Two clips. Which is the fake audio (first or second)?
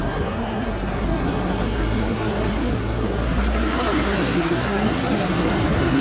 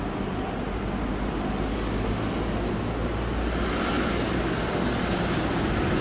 first